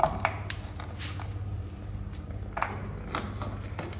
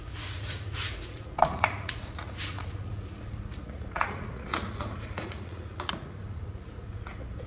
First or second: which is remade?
second